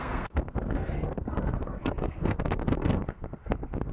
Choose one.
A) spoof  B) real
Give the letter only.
A